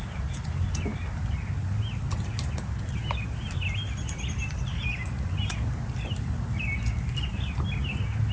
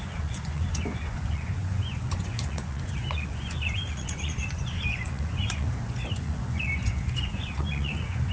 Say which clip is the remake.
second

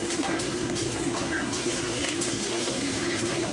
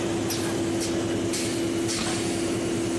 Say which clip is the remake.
first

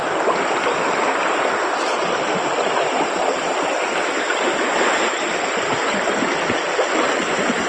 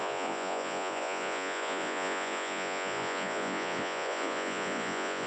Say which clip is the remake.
second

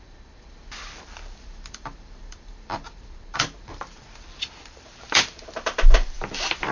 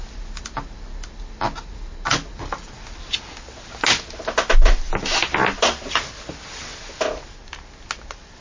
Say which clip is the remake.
first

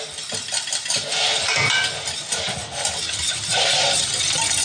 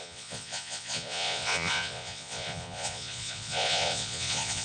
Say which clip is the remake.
second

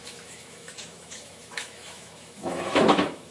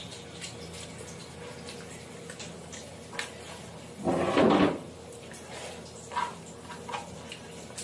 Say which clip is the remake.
first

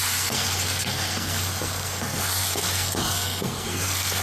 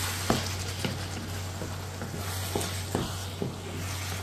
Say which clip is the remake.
first